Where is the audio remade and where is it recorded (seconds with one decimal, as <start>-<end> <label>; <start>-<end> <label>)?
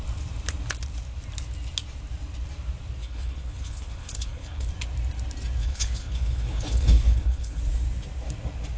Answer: 0.0-3.0 recorded; 3.0-4.7 remade; 4.7-5.6 recorded; 5.6-7.6 remade; 7.6-8.8 recorded